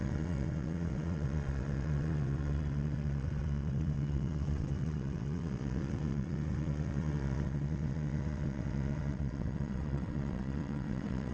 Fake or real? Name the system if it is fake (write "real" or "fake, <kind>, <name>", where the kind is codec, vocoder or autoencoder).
fake, vocoder, WaveNeXt